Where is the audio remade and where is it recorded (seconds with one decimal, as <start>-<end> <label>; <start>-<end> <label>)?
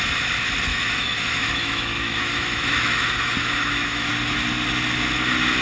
0.0-0.7 recorded; 0.7-4.1 remade; 4.1-5.6 recorded